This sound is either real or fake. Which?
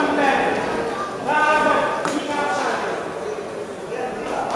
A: real